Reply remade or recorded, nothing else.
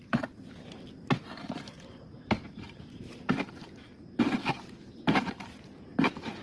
remade